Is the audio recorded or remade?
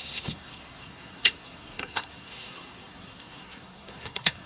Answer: remade